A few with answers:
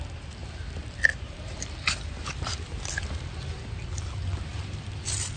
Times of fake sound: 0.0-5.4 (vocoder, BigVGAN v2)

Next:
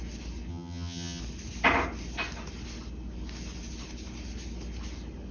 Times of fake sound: 0.5-1.2 (vocoder, HiFi-GAN)

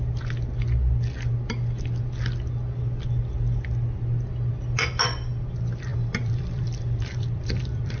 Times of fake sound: 5.9-8.0 (vocoder, BigVGAN v2)

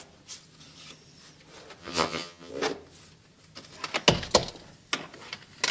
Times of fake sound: 1.8-2.5 (vocoder, HiFi-GAN)